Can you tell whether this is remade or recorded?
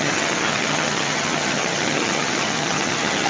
remade